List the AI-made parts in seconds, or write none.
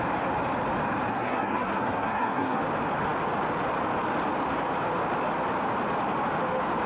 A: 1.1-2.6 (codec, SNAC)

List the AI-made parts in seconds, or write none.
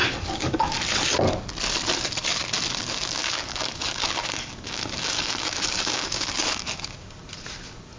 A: 0.0-0.8 (codec, DAC); 2.8-7.0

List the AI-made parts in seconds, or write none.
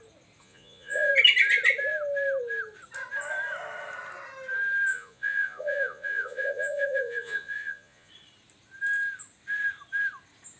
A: 0.4-1.1 (vocoder, Vocos); 4.9-8.1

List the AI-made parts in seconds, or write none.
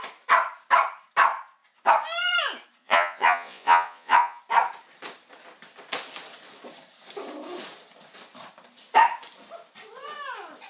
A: 2.8-4.4 (vocoder, Vocos)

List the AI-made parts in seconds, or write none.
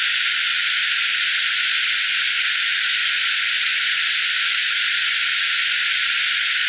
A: none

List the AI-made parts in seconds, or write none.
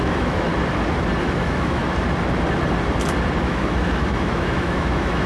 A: 0.0-0.5 (autoencoder, DAC-VAE); 1.2-1.8; 3.4-5.3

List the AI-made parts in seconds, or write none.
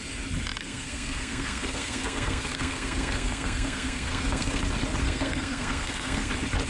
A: 0.6-4.6 (codec, SNAC); 5.0-6.3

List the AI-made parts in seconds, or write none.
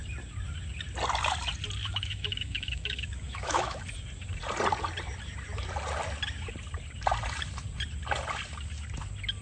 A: 1.8-3.8 (autoencoder, DAC-VAE)